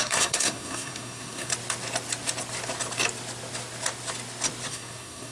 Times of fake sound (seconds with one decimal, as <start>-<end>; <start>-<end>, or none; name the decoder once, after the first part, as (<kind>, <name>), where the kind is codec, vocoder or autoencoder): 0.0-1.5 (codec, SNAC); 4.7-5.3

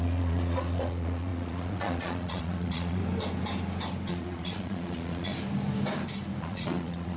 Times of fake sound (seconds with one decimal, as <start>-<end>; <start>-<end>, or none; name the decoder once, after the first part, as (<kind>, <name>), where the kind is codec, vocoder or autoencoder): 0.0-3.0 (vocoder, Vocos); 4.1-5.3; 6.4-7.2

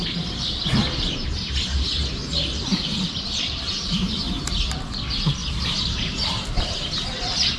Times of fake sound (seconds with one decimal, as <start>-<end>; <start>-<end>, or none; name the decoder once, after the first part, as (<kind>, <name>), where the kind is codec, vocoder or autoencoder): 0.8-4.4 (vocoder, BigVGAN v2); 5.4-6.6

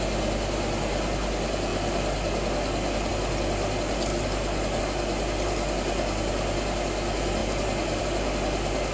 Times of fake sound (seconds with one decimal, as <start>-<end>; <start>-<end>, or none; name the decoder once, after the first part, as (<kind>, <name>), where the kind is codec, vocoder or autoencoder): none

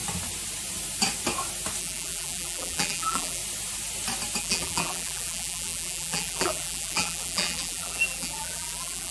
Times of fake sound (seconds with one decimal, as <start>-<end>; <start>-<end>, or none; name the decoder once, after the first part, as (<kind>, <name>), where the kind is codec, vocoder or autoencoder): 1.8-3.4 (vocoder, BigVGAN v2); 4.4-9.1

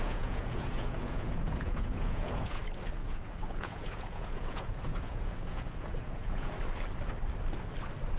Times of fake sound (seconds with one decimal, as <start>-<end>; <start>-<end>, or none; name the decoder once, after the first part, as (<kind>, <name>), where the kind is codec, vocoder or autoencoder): 0.0-2.6 (vocoder, Vocos); 3.0-6.6

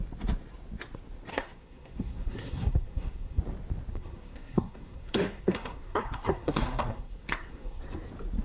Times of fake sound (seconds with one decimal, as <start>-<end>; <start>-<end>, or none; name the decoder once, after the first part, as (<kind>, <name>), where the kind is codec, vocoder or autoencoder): 1.3-3.4 (codec, SNAC); 3.9-7.8